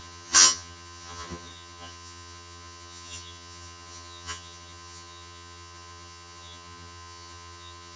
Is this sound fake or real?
fake